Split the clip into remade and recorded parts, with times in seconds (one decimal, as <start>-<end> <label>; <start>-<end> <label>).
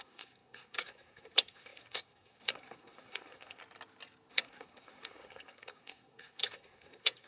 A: 0.0-3.6 remade; 3.6-4.3 recorded; 4.3-7.3 remade